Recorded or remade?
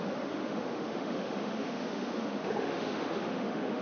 remade